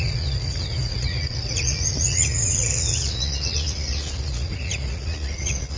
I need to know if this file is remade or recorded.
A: remade